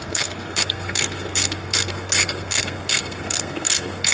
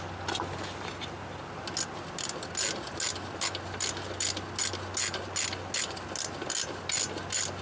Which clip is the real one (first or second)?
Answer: second